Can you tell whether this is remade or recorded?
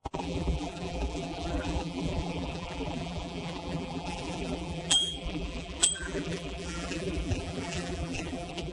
remade